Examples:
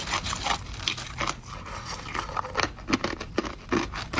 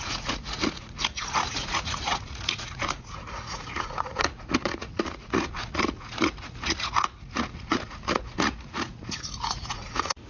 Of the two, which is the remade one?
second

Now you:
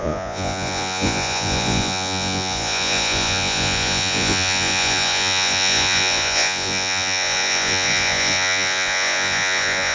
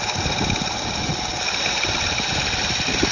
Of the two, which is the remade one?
first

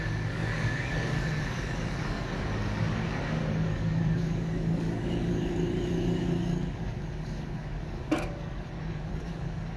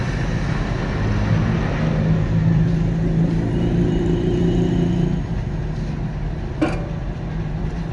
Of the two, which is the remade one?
first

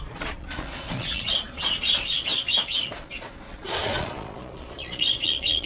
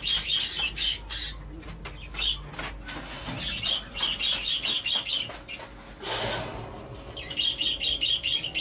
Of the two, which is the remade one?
first